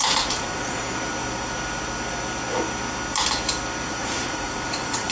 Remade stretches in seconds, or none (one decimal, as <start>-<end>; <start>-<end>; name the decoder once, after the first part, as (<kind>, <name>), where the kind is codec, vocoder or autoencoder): 0.0-0.8 (vocoder, Vocos); 3.9-5.1